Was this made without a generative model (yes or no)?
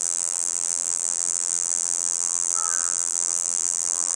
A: no